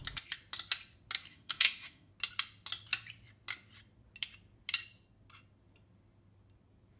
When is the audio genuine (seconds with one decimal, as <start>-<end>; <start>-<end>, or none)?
0.0-1.3; 2.1-7.0